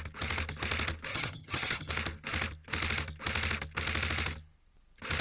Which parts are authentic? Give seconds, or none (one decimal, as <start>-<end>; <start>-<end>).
0.0-1.1; 1.9-5.2